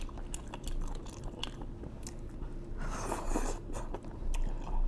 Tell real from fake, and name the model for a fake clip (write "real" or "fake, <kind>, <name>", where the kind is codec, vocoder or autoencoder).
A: real